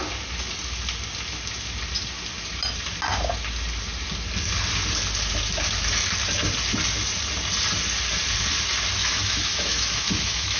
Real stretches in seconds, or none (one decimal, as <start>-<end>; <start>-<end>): 0.0-9.0